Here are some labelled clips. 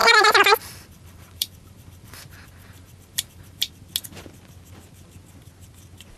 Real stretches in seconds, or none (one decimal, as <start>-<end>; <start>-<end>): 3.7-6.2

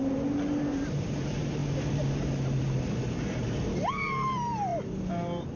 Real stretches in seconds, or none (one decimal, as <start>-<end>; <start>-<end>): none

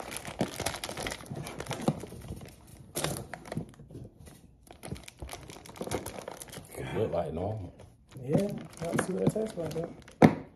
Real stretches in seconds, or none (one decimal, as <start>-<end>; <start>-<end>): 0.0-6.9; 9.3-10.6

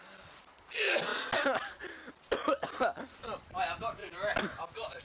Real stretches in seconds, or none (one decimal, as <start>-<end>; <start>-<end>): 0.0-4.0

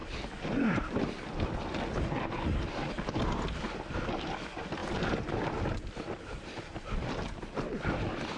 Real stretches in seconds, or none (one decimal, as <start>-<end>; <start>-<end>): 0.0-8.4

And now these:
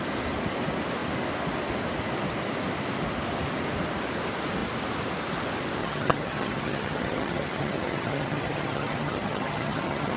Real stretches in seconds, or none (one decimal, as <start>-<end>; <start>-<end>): 0.0-5.8

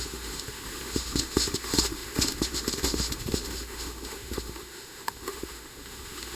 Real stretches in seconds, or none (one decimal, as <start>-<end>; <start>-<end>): none

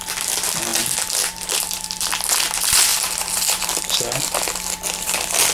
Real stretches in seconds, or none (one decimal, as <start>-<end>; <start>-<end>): 0.0-5.5